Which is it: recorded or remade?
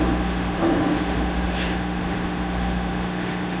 remade